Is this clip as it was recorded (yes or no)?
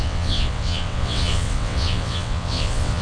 no